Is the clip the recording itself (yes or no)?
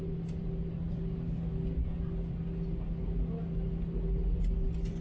yes